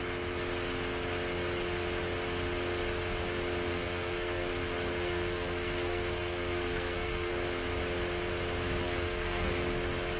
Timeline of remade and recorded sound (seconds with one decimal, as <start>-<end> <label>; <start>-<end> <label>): 0.0-3.7 recorded; 3.7-4.5 remade; 4.5-4.9 recorded; 4.9-7.3 remade; 7.3-8.8 recorded; 8.8-9.5 remade; 9.5-10.2 recorded